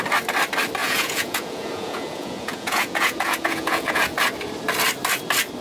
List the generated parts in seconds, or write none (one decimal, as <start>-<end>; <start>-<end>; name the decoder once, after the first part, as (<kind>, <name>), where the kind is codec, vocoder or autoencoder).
0.8-4.2 (vocoder, Vocos)